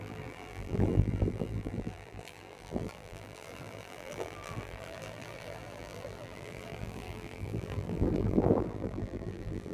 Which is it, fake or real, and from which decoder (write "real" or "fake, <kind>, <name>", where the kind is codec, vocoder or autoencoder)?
fake, vocoder, BigVGAN v2